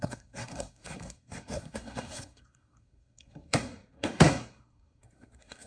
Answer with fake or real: fake